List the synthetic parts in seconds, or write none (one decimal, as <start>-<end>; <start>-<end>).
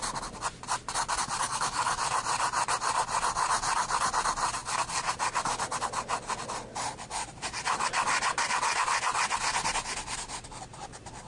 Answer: 1.4-2.0